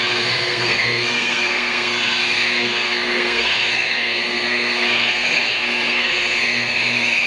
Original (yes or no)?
no